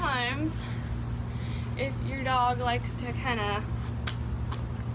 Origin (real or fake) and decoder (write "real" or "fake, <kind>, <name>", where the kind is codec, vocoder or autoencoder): real